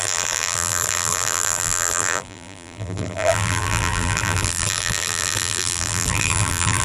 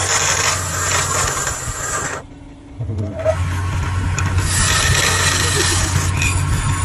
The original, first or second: second